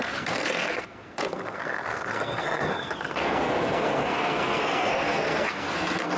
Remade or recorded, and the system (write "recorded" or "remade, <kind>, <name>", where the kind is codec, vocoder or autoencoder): remade, codec, SNAC